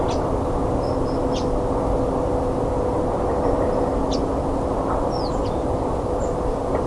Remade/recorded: recorded